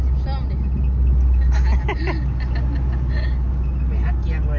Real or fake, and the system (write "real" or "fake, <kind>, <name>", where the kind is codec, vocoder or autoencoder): real